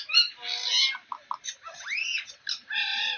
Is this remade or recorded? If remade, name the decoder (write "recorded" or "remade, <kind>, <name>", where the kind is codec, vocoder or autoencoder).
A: recorded